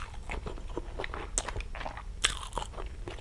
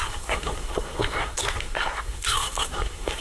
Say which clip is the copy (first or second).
second